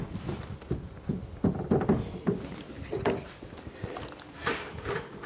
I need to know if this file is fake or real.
real